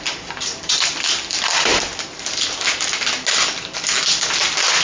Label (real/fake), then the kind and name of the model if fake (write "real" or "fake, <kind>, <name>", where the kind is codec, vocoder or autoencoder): real